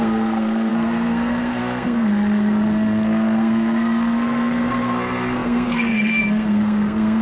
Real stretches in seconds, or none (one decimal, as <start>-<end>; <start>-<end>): none